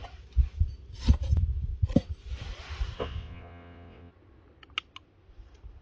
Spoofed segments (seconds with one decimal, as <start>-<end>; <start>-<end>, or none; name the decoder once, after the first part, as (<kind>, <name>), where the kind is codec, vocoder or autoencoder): 3.0-4.1 (vocoder, WaveNeXt)